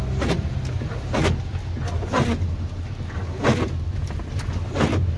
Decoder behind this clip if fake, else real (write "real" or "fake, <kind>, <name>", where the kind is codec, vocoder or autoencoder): real